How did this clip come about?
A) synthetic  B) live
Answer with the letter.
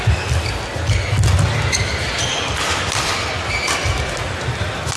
B